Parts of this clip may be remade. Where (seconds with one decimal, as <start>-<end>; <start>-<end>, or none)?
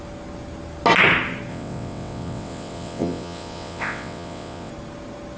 1.5-4.7